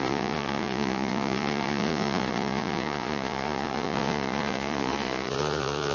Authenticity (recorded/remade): remade